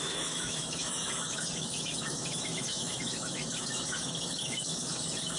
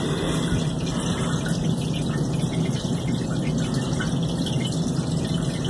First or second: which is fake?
first